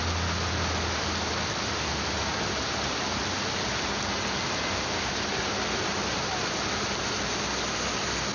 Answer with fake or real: real